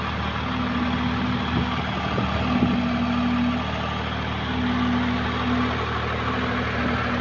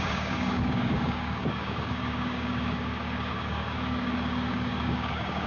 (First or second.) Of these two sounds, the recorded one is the first